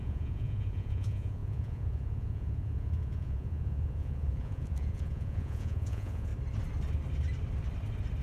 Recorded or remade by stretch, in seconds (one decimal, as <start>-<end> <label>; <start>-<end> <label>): 0.0-6.3 remade; 6.3-8.2 recorded